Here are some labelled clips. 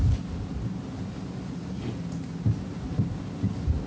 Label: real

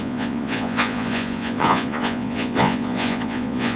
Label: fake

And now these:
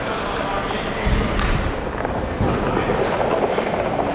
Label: real